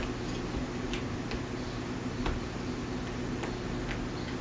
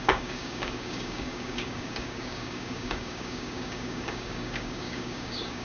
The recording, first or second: first